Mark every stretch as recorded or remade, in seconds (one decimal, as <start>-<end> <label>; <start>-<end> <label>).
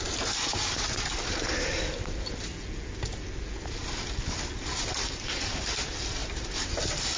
0.0-7.2 recorded